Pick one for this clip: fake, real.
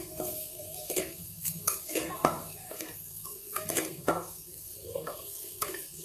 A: fake